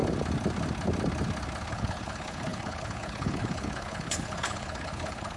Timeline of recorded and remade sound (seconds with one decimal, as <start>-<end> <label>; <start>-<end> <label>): 0.0-1.7 recorded; 1.7-5.4 remade